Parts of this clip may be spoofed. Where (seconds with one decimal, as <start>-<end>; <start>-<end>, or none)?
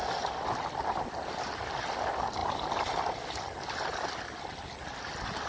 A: none